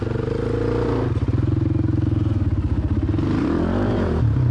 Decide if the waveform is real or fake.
real